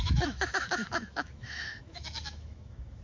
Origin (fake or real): fake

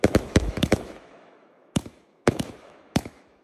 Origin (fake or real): fake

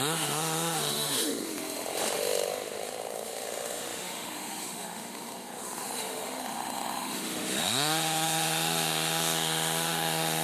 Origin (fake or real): fake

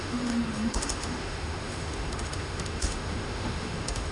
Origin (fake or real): fake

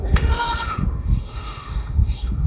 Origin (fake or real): fake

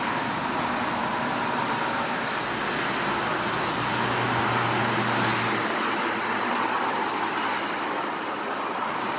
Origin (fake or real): real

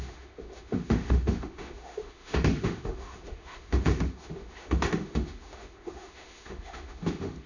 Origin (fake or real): fake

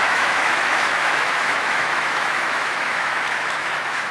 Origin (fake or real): fake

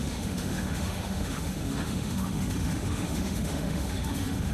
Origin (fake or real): fake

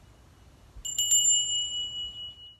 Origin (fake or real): real